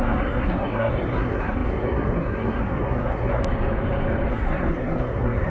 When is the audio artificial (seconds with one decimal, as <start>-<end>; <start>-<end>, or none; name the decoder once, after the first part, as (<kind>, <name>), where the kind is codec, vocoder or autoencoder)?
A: 0.0-3.4 (codec, SNAC); 4.3-5.5